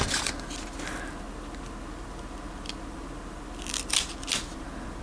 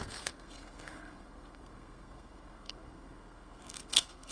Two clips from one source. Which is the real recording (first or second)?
first